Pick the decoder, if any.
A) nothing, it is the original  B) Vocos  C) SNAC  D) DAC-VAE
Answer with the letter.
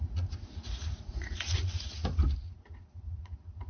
B